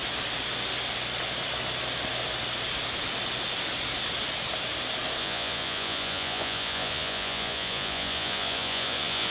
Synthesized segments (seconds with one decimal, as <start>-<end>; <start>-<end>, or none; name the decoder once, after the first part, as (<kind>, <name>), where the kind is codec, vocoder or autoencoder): 5.2-9.3 (vocoder, Vocos)